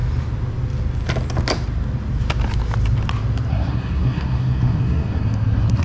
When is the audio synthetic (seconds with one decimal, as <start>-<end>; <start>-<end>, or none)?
3.5-5.8